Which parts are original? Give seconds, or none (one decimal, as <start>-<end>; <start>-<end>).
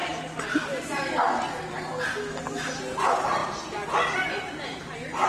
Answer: 0.0-5.3